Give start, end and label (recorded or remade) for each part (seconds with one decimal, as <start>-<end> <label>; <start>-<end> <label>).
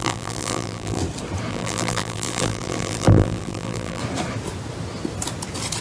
0.0-1.0 remade; 1.0-1.5 recorded; 1.5-4.0 remade; 4.0-5.8 recorded